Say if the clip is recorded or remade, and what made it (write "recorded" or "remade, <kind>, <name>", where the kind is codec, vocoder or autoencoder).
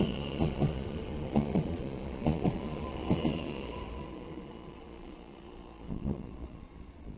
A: remade, vocoder, Vocos